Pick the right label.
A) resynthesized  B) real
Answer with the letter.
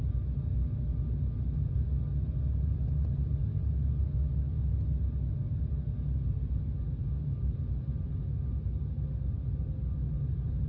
B